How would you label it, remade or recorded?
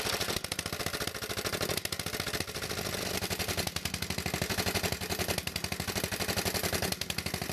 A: recorded